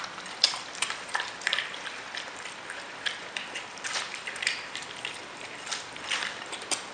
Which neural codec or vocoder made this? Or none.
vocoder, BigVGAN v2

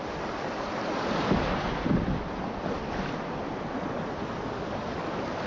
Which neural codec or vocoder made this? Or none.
none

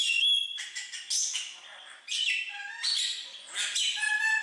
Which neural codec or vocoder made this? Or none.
none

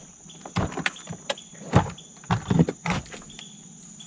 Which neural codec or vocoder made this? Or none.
vocoder, BigVGAN v2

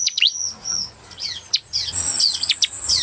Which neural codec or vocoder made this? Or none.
vocoder, Vocos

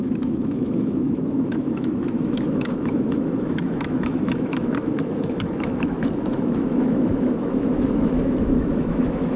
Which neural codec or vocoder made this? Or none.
autoencoder, DAC-VAE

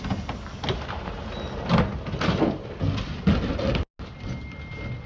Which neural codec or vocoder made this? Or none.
none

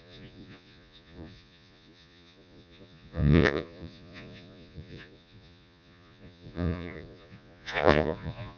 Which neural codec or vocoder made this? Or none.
vocoder, Vocos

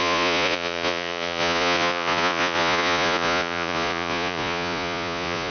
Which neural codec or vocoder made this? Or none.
vocoder, Vocos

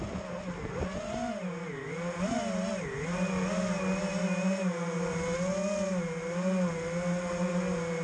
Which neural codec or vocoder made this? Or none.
none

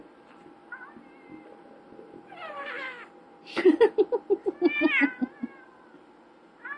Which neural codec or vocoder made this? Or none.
vocoder, BigVGAN v2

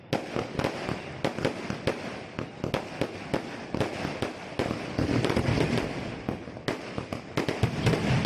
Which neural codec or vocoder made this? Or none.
none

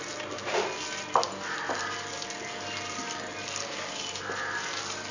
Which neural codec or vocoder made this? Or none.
none